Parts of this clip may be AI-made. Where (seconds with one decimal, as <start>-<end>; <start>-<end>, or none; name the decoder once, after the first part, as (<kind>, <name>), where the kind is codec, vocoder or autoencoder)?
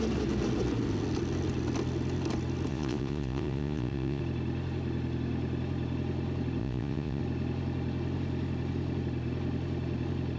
2.7-4.2 (vocoder, Vocos); 6.6-7.2